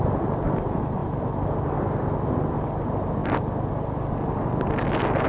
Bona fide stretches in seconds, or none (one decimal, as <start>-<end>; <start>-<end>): 0.0-5.3